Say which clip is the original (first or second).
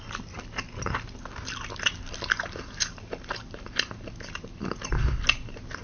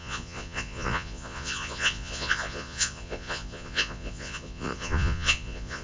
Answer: first